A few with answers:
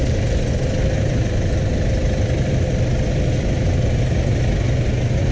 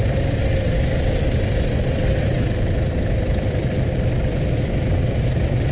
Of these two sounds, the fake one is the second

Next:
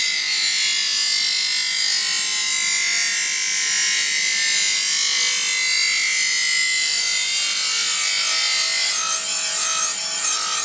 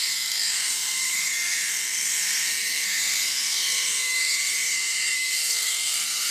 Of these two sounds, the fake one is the second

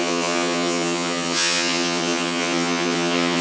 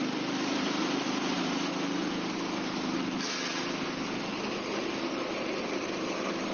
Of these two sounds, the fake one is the first